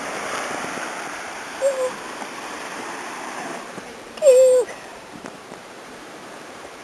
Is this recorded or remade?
remade